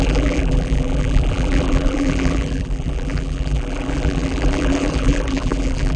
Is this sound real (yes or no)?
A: no